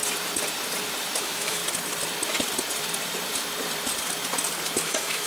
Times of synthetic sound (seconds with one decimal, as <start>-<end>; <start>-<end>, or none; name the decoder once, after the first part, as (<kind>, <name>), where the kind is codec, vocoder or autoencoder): 1.2-1.6 (autoencoder, DAC-VAE); 4.8-5.3